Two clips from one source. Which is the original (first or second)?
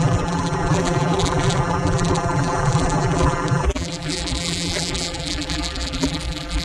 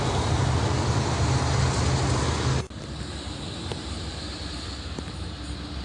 second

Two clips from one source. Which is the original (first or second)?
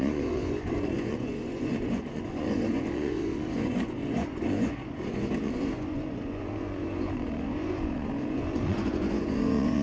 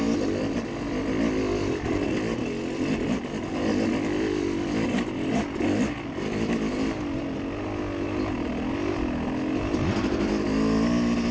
second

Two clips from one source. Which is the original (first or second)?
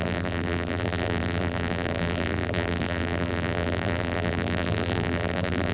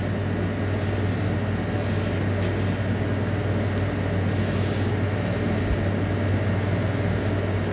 second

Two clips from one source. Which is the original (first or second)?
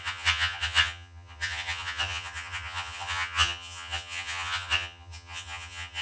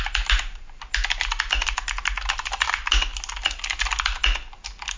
second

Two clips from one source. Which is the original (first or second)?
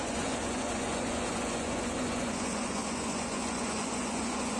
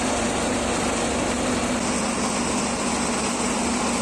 second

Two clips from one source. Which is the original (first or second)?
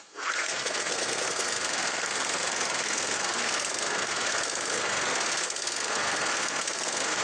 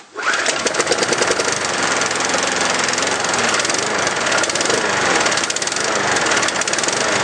second